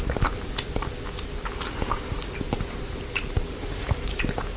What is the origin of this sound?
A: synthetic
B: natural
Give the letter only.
B